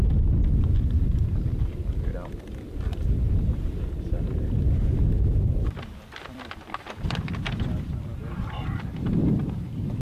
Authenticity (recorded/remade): remade